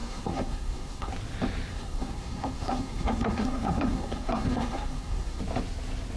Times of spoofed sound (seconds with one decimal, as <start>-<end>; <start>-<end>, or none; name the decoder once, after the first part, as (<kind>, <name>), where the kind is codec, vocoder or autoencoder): 0.0-1.1 (codec, SNAC); 1.7-5.4